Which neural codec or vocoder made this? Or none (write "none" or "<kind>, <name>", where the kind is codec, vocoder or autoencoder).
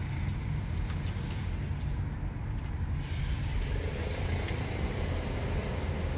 none